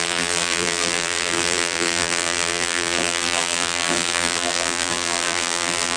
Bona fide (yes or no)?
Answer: no